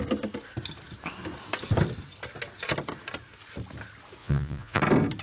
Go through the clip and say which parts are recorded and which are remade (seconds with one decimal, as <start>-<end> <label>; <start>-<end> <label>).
0.0-4.2 recorded; 4.2-4.8 remade; 4.8-5.2 recorded